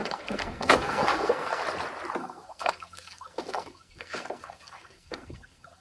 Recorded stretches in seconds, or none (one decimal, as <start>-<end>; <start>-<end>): 1.6-2.2